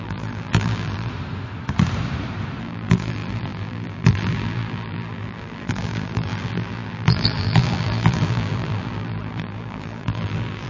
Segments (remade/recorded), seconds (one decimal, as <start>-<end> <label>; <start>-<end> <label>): 0.0-1.1 remade; 1.1-2.6 recorded; 2.6-10.7 remade